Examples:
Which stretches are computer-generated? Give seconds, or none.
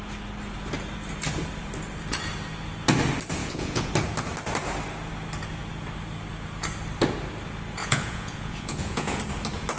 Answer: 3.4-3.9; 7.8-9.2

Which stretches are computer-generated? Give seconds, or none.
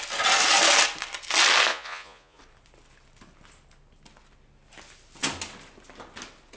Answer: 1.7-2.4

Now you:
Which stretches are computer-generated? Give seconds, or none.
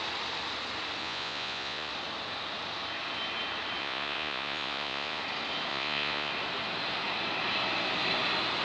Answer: 1.0-1.9; 3.8-5.2; 5.7-6.3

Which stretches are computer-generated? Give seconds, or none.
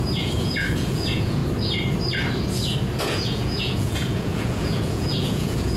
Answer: 0.0-1.4; 3.0-5.8